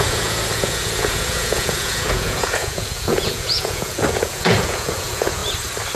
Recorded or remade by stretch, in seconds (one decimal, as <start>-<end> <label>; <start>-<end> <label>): 0.0-5.4 remade; 5.4-6.0 recorded